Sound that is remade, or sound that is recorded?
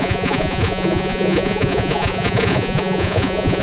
remade